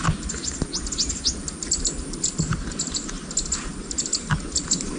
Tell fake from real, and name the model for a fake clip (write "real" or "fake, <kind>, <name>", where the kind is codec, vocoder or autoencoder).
real